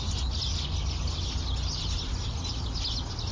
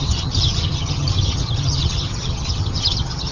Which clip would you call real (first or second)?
first